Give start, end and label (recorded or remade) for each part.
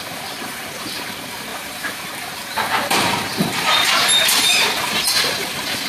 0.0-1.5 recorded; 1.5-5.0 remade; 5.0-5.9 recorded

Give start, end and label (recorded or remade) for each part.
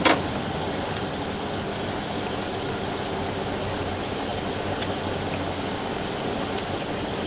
0.0-1.7 recorded; 1.7-2.4 remade; 2.4-7.3 recorded